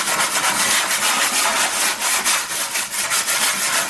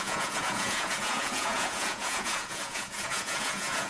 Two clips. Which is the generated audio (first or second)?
second